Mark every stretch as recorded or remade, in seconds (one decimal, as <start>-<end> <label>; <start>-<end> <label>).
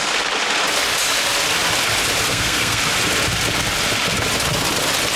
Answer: 0.0-2.3 recorded; 2.3-2.8 remade; 2.8-5.2 recorded